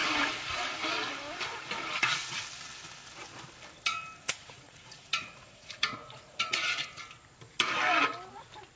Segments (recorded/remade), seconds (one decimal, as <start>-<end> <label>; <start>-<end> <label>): 0.0-4.2 recorded; 4.2-7.0 remade; 7.0-8.8 recorded